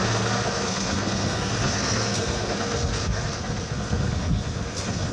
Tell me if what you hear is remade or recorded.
remade